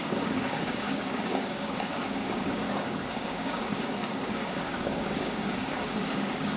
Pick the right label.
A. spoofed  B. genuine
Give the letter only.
A